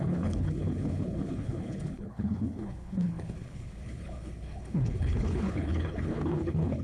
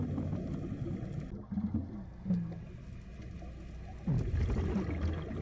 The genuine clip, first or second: second